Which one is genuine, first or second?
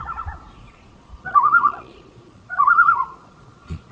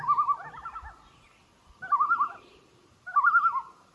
second